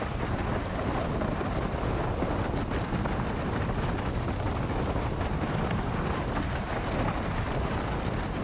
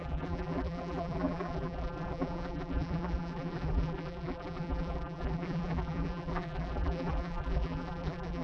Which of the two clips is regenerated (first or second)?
second